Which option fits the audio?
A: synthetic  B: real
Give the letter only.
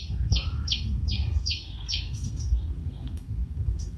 A